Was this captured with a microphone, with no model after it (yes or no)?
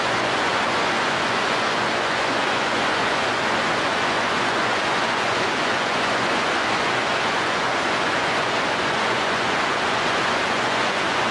no